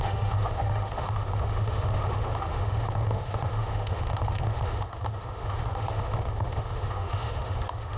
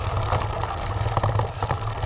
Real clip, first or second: second